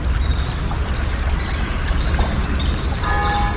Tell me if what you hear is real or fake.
real